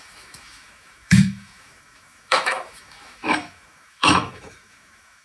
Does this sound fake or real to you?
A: fake